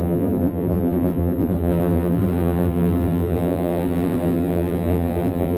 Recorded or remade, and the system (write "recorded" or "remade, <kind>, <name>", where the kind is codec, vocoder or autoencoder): remade, vocoder, BigVGAN v2